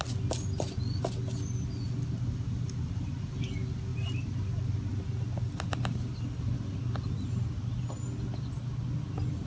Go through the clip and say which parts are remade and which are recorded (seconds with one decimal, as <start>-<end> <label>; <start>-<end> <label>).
0.0-9.5 recorded